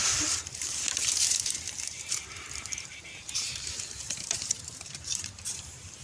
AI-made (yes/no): yes